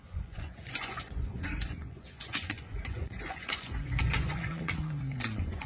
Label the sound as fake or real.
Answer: fake